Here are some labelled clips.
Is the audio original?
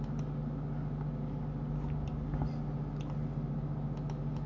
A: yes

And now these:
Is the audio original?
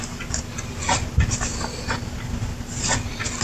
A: yes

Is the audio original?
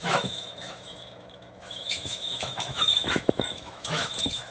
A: no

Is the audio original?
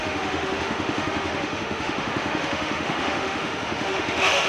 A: no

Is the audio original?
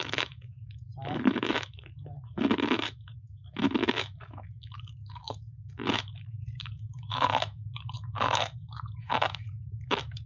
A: no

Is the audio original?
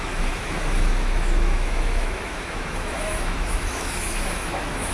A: no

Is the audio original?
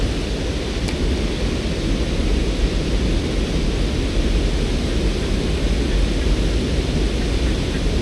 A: yes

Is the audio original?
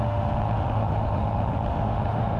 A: no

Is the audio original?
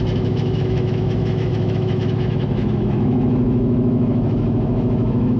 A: no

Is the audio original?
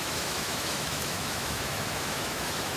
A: no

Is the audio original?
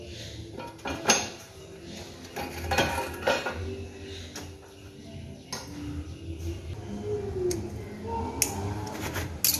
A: yes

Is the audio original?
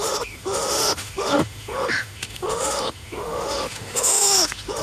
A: no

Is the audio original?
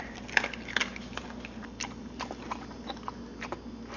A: yes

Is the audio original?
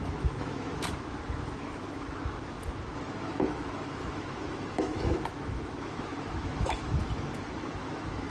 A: no